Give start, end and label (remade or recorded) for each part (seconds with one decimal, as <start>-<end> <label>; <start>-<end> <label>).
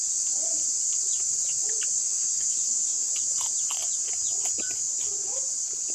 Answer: 0.0-2.0 recorded; 2.0-3.1 remade; 3.1-5.9 recorded